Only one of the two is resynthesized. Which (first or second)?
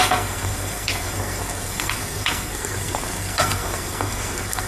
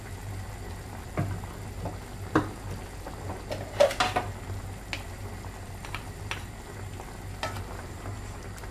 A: first